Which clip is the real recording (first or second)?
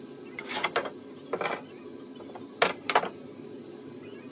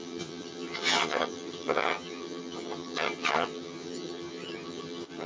first